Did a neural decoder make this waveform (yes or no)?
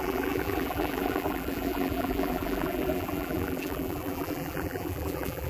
yes